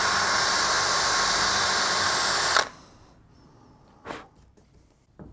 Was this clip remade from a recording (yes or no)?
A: no